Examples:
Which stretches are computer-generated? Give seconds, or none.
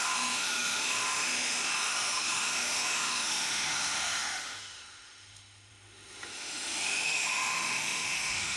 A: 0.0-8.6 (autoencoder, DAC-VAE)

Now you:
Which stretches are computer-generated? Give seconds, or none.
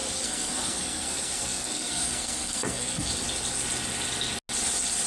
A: 0.0-3.1 (codec, SNAC)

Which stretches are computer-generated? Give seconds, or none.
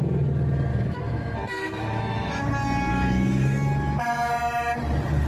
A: 0.7-2.4 (autoencoder, DAC-VAE); 2.9-4.3